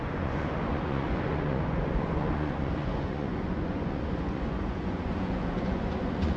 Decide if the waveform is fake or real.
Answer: fake